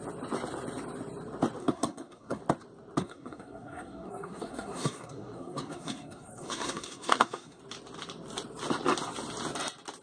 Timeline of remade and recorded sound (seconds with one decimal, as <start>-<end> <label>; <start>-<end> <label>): 0.0-1.6 recorded; 1.6-2.4 remade; 2.4-3.0 recorded; 3.0-7.6 remade; 7.6-10.0 recorded